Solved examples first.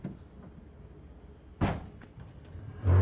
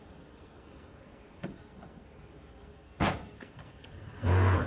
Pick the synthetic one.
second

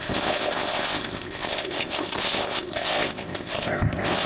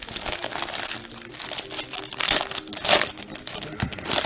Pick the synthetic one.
first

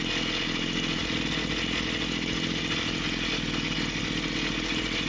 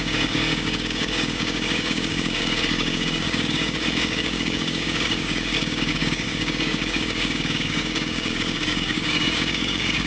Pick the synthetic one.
second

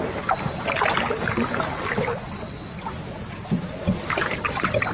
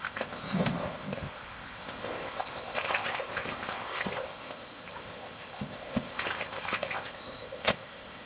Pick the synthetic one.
second